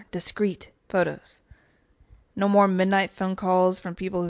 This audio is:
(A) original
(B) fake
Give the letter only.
A